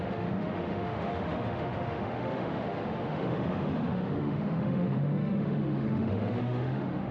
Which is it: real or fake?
fake